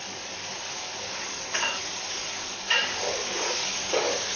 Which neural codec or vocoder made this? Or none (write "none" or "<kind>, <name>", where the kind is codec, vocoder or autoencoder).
codec, DAC